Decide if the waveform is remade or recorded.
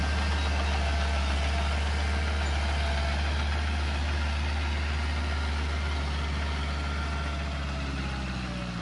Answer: recorded